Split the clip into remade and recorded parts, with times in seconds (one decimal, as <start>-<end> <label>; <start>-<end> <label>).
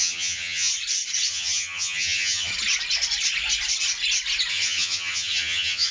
0.0-0.7 remade; 0.7-1.3 recorded; 1.3-2.5 remade; 2.5-4.5 recorded; 4.5-5.9 remade